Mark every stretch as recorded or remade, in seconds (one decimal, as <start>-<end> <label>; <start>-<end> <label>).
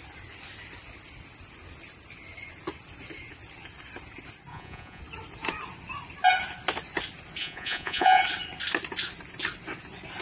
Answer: 0.0-4.5 recorded; 4.5-5.0 remade; 5.0-7.4 recorded; 7.4-8.2 remade; 8.2-10.2 recorded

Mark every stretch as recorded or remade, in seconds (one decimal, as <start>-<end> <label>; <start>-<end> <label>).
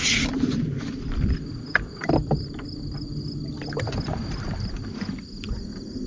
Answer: 0.0-6.1 recorded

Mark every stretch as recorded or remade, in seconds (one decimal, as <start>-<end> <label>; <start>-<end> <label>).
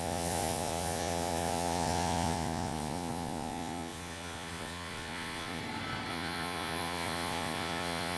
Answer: 0.0-5.6 remade; 5.6-6.1 recorded; 6.1-8.2 remade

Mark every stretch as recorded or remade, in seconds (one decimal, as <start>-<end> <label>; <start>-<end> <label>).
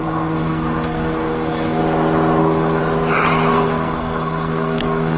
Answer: 0.0-1.8 remade; 1.8-2.4 recorded; 2.4-2.8 remade; 2.8-3.5 recorded; 3.5-5.2 remade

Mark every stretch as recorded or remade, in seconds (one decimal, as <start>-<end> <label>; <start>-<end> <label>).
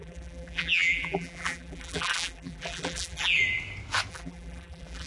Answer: 0.0-3.4 remade; 3.4-4.1 recorded; 4.1-5.1 remade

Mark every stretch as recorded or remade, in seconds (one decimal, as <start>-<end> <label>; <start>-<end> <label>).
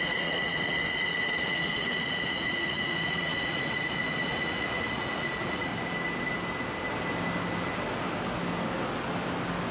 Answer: 0.0-5.7 remade; 5.7-9.7 recorded